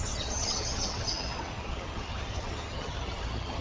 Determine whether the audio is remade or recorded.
remade